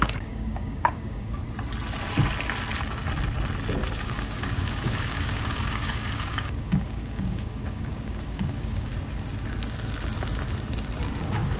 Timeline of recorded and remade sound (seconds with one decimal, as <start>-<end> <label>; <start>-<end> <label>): 0.0-1.4 remade; 1.4-4.0 recorded; 4.0-8.9 remade; 8.9-11.2 recorded; 11.2-11.6 remade